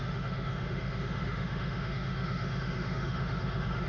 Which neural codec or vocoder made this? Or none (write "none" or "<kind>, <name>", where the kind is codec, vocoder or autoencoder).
autoencoder, DAC-VAE